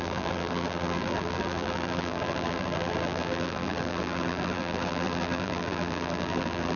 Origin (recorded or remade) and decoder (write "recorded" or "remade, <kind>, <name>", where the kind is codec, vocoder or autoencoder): remade, vocoder, BigVGAN v2